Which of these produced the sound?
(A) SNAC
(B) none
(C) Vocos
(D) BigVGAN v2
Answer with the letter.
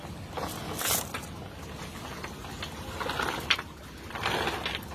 B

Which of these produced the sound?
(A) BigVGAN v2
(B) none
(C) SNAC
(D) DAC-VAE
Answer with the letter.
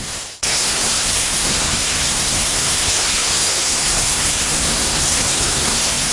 C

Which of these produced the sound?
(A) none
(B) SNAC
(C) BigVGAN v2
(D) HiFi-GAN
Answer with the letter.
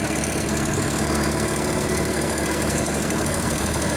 B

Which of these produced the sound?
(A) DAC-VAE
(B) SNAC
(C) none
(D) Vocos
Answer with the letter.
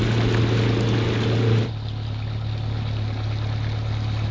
C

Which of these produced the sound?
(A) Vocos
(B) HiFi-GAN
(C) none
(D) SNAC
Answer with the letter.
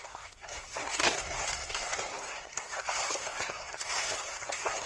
D